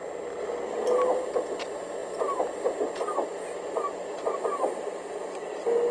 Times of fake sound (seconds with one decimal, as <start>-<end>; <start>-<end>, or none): none